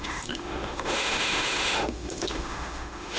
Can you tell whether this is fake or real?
fake